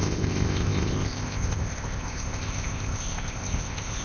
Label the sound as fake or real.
fake